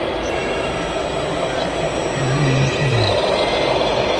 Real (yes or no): yes